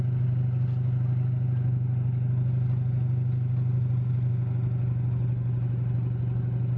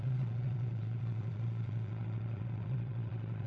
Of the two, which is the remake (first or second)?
second